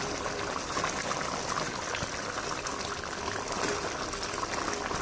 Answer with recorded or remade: recorded